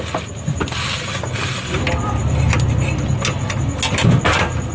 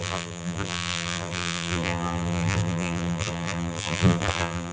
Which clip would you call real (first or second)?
first